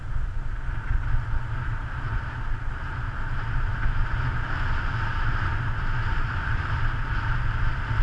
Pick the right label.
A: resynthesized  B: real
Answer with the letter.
B